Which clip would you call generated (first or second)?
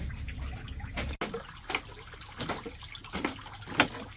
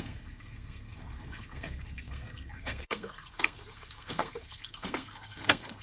second